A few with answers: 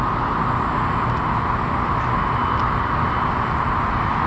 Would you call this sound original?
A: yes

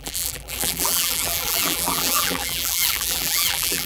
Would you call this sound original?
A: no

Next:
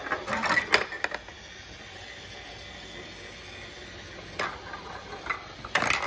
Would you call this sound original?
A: yes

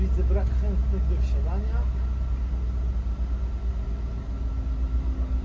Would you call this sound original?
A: yes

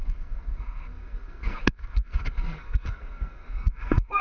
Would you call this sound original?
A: no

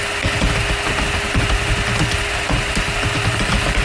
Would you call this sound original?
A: yes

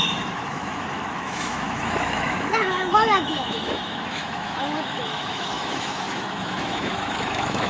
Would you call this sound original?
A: no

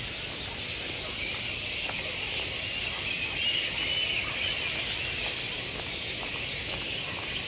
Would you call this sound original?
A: yes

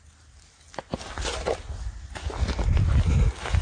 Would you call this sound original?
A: yes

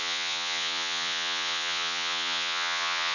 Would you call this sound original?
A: no